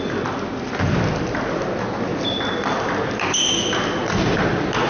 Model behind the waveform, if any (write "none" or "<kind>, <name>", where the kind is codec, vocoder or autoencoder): none